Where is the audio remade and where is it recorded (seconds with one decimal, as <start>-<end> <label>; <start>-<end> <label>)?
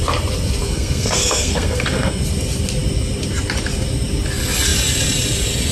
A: 0.0-0.6 recorded; 0.6-2.2 remade; 2.2-5.7 recorded